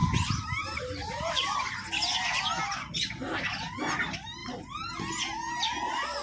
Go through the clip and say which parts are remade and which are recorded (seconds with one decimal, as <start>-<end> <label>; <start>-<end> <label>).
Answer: 0.0-1.7 remade; 1.7-4.4 recorded; 4.4-4.9 remade; 4.9-6.2 recorded